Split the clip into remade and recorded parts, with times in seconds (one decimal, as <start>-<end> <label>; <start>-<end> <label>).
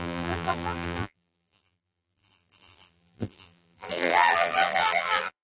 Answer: 0.0-5.4 remade